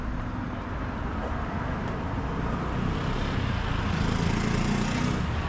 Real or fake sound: real